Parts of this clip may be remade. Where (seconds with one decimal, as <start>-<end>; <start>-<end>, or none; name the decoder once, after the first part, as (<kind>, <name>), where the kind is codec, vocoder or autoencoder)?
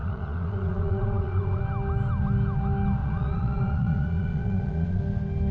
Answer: 0.0-1.6 (vocoder, Vocos); 3.0-5.0